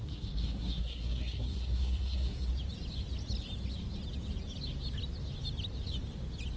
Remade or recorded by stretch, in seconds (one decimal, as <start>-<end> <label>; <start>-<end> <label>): 0.0-2.5 remade; 2.5-6.6 recorded